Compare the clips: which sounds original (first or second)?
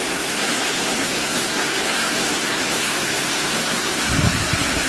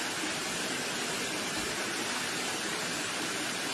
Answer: second